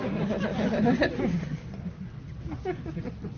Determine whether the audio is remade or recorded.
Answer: recorded